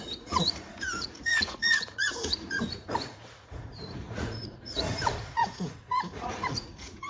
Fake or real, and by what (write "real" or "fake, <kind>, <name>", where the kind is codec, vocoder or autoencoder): fake, vocoder, Vocos